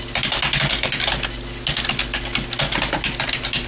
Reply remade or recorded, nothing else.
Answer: recorded